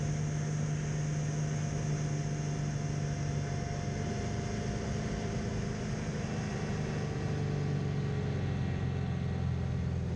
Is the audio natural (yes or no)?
yes